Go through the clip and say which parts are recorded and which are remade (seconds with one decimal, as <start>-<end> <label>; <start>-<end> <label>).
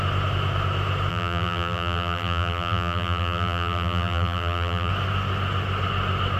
0.0-1.1 recorded; 1.1-4.9 remade; 4.9-6.4 recorded